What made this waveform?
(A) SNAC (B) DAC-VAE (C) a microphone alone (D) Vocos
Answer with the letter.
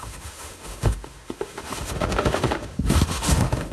B